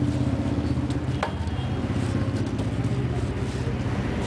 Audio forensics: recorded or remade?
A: recorded